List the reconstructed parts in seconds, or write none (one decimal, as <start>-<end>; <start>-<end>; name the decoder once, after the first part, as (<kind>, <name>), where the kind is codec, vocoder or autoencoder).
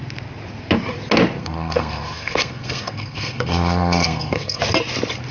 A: 1.4-4.6 (codec, SNAC)